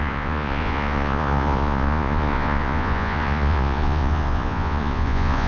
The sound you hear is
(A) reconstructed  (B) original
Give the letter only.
A